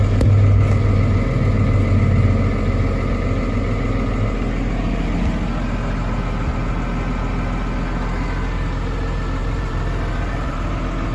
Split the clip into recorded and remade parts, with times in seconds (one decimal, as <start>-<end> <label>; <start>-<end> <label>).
0.0-9.4 recorded; 9.4-10.7 remade; 10.7-11.1 recorded